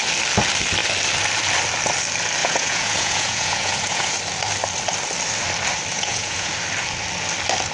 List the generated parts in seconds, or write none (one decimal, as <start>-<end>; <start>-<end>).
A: 2.4-4.2; 5.9-6.5